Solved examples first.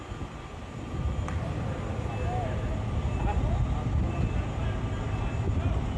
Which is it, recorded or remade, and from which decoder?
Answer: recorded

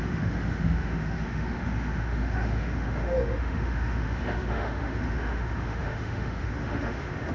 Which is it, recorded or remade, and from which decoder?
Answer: remade, autoencoder, DAC-VAE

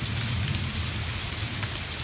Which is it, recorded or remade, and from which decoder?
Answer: recorded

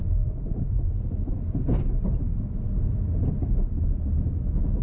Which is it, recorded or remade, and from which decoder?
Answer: recorded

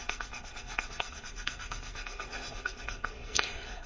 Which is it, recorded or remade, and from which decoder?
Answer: remade, codec, SNAC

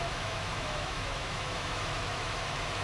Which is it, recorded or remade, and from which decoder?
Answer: remade, autoencoder, DAC-VAE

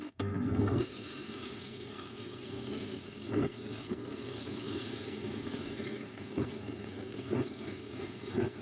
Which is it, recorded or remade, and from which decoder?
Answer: remade, codec, SNAC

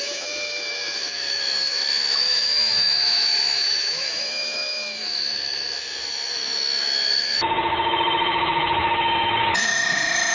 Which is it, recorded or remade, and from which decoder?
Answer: remade, autoencoder, DAC-VAE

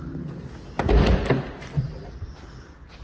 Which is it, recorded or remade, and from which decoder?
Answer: recorded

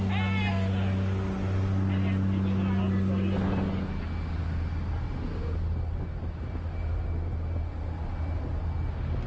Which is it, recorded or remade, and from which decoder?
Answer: recorded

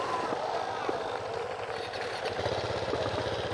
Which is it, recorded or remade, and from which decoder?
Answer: recorded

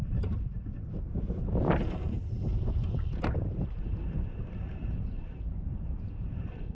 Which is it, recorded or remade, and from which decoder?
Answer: remade, vocoder, BigVGAN v2